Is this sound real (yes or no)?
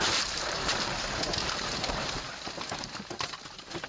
no